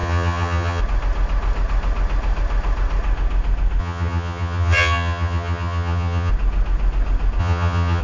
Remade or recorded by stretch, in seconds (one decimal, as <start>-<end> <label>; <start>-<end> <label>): 0.0-0.8 remade; 0.8-3.8 recorded; 3.8-6.3 remade; 6.3-7.4 recorded; 7.4-8.0 remade